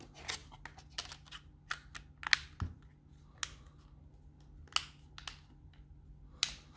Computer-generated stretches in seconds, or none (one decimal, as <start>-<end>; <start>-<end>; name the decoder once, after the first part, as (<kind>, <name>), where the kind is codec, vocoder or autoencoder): none